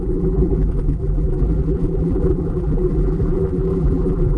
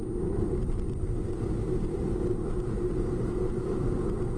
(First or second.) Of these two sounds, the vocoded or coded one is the first